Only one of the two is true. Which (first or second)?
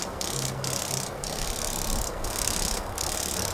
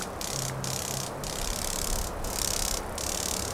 second